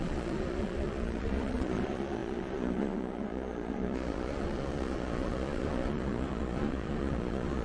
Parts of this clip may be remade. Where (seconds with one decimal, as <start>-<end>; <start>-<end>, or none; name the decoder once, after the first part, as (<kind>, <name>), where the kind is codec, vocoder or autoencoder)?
0.0-7.6 (vocoder, Vocos)